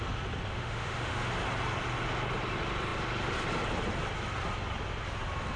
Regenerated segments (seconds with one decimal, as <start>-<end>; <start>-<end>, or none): 0.5-1.3